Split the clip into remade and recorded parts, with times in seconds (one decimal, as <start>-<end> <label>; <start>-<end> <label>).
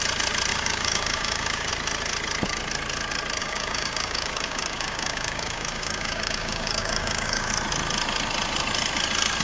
0.0-0.5 recorded; 0.5-1.7 remade; 1.7-3.4 recorded; 3.4-7.5 remade; 7.5-9.4 recorded